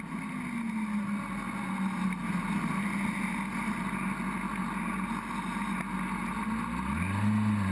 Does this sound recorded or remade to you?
recorded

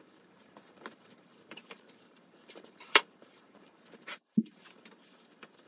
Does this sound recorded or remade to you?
remade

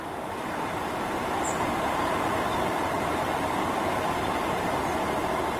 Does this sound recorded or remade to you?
remade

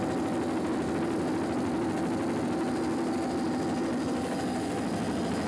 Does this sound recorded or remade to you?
recorded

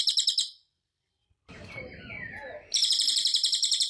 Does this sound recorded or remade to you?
remade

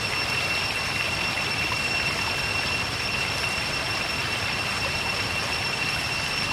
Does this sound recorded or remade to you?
remade